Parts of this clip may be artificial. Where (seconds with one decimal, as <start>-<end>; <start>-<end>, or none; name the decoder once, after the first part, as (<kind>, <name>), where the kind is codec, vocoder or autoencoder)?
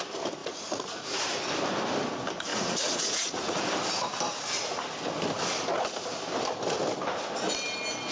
0.4-1.2 (vocoder, Vocos); 2.5-3.6